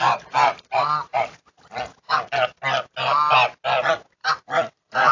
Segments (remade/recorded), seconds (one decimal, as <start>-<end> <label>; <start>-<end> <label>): 0.0-4.2 recorded; 4.2-5.1 remade